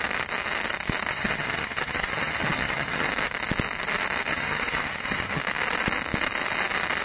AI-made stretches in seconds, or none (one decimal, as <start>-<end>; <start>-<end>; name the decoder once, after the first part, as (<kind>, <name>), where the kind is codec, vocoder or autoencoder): 1.1-3.1 (vocoder, HiFi-GAN); 4.3-5.4